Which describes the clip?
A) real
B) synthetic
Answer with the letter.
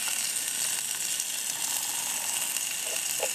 A